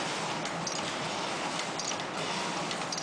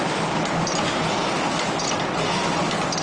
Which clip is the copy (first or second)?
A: first